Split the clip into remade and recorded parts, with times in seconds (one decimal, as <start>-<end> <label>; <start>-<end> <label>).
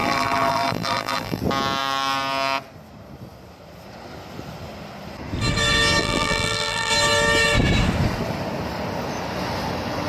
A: 0.0-1.4 remade; 1.4-6.0 recorded; 6.0-6.9 remade; 6.9-10.1 recorded